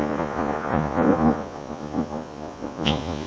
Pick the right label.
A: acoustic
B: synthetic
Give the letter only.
B